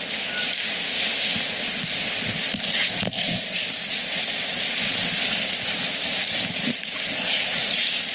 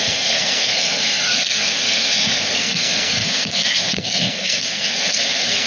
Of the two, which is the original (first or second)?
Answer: first